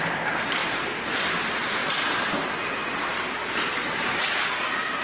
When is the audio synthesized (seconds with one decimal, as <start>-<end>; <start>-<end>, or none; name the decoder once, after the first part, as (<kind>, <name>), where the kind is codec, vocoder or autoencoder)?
0.6-1.3 (vocoder, BigVGAN v2); 1.8-2.7